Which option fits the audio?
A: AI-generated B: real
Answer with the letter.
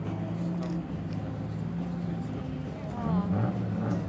B